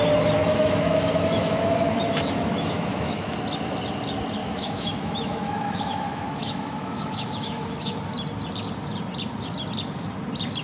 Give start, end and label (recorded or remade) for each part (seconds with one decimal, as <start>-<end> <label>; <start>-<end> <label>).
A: 0.0-0.4 recorded; 0.4-3.3 remade; 3.3-4.4 recorded; 4.4-8.0 remade; 8.0-10.6 recorded